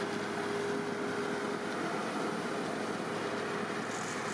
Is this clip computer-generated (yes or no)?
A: no